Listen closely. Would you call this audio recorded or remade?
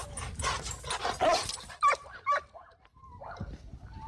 recorded